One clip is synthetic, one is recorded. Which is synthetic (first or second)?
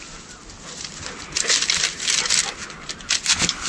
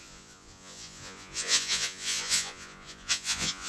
second